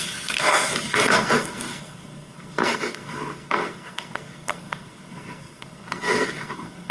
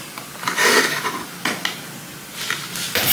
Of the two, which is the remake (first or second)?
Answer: first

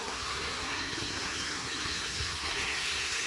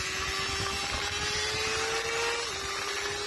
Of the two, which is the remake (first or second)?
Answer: first